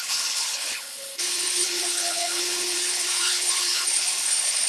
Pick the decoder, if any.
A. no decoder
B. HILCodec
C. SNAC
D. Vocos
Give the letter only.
B